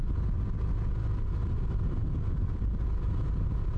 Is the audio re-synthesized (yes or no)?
no